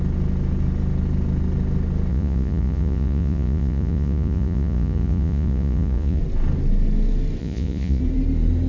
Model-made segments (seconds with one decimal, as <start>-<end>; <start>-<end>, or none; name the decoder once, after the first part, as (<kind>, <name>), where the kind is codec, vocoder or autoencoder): 2.1-6.2 (vocoder, Vocos); 7.4-8.0